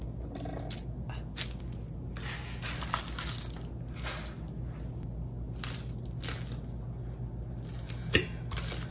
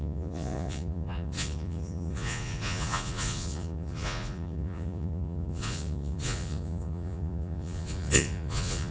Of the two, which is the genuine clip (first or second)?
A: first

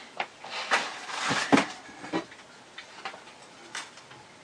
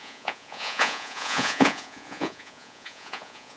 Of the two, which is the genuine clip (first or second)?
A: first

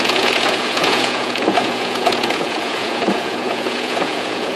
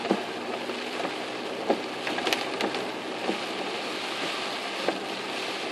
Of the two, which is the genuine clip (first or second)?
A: second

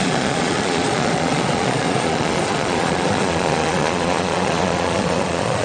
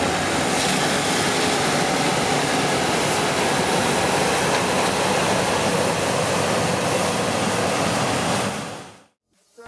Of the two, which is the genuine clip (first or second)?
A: second